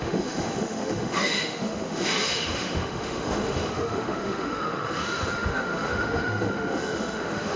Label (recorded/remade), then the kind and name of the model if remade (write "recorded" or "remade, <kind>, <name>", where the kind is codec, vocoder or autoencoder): remade, autoencoder, DAC-VAE